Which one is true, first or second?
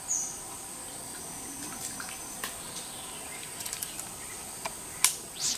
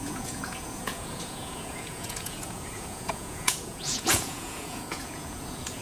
first